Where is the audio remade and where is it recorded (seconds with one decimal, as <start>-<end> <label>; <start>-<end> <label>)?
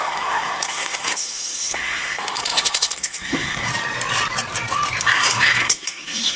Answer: 0.0-3.7 remade; 3.7-5.0 recorded; 5.0-6.4 remade